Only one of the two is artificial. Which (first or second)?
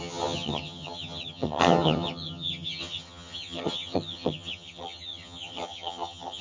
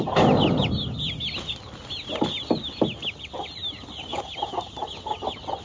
first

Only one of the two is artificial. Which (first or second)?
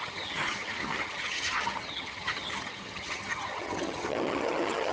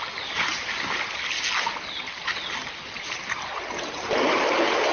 first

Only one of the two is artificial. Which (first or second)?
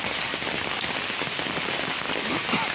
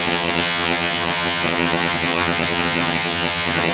second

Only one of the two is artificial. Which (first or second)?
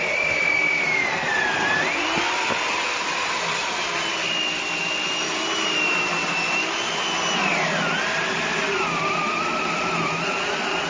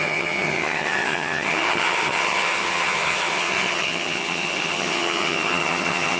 second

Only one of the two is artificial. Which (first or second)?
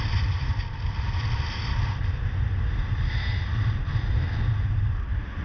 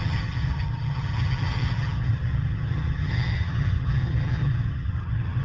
second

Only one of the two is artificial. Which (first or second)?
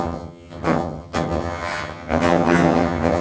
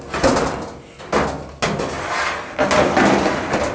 first